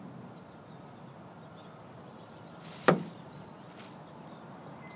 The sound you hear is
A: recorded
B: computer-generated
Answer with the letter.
A